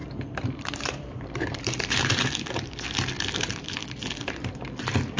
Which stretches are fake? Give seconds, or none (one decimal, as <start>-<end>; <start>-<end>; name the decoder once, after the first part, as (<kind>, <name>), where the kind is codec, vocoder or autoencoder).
0.0-2.3 (vocoder, BigVGAN v2)